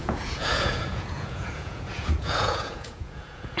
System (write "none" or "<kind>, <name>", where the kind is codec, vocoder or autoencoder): vocoder, Vocos